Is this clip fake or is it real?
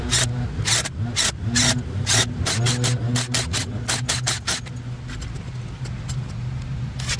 real